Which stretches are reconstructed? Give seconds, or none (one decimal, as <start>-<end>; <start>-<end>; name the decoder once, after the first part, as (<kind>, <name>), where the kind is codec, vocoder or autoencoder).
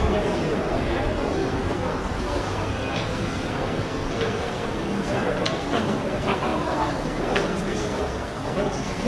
0.0-9.1 (codec, SNAC)